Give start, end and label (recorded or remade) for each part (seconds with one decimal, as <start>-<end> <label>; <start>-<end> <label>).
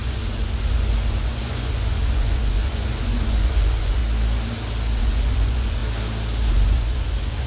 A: 0.0-4.0 remade; 4.0-5.0 recorded; 5.0-5.8 remade; 5.8-6.5 recorded; 6.5-7.5 remade